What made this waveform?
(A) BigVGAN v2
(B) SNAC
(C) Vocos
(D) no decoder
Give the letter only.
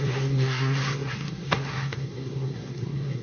B